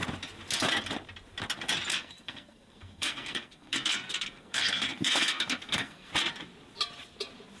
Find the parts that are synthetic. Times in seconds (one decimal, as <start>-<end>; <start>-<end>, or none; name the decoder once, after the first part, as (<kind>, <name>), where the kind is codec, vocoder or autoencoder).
1.9-6.1 (codec, SNAC)